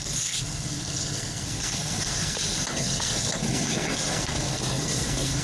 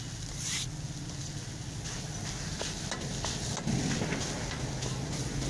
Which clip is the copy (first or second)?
first